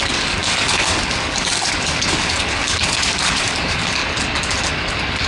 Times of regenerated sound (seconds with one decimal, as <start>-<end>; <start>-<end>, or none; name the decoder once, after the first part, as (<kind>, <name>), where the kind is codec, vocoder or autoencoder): 0.0-4.0 (codec, DAC); 4.7-5.3